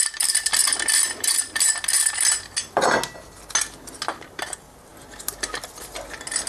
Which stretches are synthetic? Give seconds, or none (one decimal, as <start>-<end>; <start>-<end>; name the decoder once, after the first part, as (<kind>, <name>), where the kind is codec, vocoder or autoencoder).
none

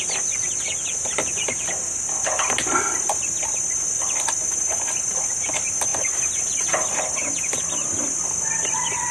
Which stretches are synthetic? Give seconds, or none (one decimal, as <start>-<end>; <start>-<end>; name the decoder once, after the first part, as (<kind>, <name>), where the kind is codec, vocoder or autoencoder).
none

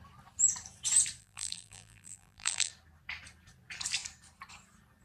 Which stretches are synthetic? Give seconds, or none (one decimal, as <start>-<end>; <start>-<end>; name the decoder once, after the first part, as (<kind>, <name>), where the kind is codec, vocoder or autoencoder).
1.2-2.7 (vocoder, BigVGAN v2)

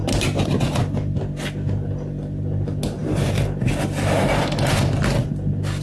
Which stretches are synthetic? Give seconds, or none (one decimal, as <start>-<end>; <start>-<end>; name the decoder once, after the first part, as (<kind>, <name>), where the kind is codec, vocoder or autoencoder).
none

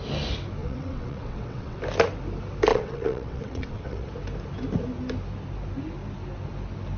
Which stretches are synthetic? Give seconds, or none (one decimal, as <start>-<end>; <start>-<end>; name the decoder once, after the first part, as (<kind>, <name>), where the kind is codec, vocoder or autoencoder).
0.6-1.8 (vocoder, WaveNeXt); 2.7-4.1